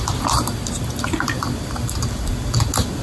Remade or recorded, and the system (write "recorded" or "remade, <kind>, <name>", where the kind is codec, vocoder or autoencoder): recorded